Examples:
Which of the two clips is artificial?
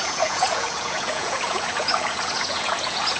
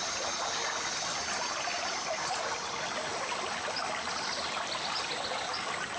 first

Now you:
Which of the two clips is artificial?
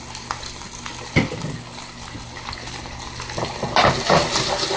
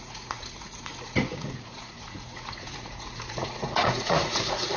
second